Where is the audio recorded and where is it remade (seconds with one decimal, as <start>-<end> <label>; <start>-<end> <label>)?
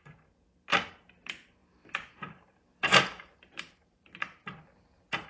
0.0-1.4 recorded; 1.4-4.6 remade; 4.6-5.3 recorded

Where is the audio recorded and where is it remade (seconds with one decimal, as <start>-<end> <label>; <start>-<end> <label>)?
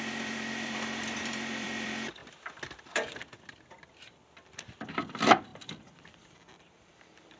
0.0-2.2 remade; 2.2-2.8 recorded; 2.8-7.4 remade